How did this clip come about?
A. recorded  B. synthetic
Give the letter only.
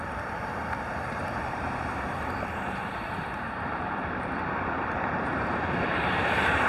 B